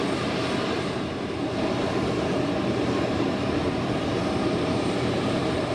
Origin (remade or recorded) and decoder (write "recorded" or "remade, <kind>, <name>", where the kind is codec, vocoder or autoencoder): remade, vocoder, BigVGAN v2